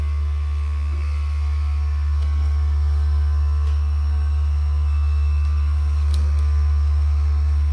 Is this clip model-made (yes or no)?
yes